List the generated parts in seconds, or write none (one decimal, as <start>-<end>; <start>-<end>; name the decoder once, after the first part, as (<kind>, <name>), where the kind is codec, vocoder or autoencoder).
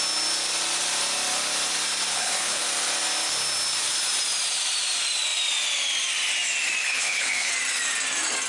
2.1-2.6 (codec, HILCodec); 6.8-7.5